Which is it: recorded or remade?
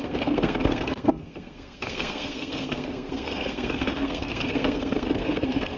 remade